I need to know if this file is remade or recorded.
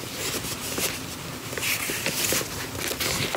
recorded